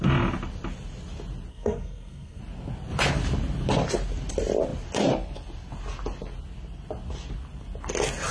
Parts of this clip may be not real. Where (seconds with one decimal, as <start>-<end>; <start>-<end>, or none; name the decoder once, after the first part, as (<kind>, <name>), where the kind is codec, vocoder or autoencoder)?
1.5-2.4 (codec, SNAC)